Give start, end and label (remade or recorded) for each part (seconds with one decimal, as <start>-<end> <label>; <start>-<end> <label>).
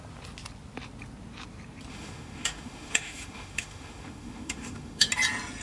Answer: 0.0-1.9 recorded; 1.9-5.1 remade; 5.1-5.6 recorded